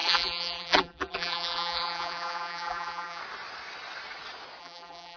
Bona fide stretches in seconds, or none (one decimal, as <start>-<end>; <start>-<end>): 3.2-4.6